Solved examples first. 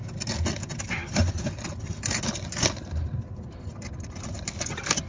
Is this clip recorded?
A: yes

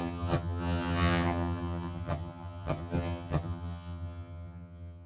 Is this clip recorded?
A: no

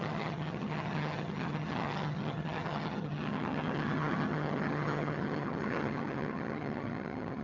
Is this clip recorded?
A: no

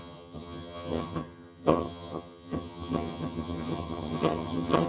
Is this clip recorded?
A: no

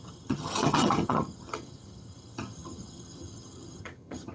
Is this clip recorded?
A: no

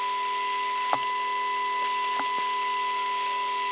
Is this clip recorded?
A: yes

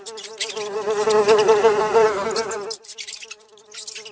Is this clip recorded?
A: yes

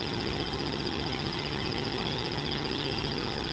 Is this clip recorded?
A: no